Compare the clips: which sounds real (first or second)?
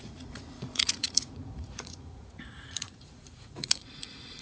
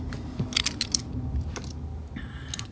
second